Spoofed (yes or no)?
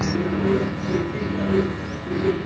no